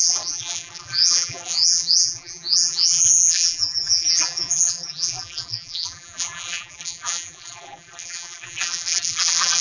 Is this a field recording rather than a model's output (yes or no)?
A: no